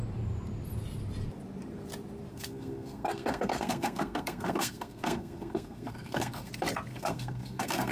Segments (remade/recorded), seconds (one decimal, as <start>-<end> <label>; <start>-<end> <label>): 0.0-2.3 recorded; 2.3-6.5 remade; 6.5-6.9 recorded; 6.9-7.9 remade